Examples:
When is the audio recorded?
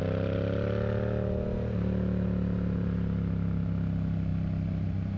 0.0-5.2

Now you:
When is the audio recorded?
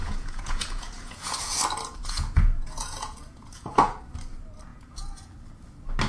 1.6-2.0; 4.0-4.7; 5.3-6.1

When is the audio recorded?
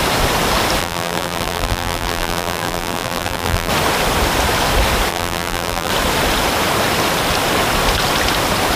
0.0-0.8; 3.7-5.1; 5.9-8.8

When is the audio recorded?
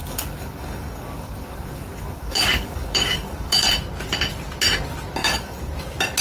3.7-5.2; 5.7-6.2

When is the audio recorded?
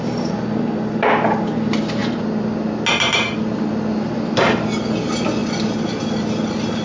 0.0-6.8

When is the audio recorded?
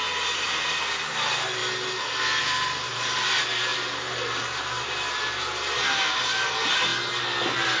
1.6-2.4; 6.9-7.8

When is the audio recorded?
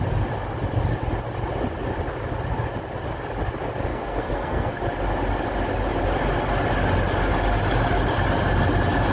0.0-3.9; 4.8-9.1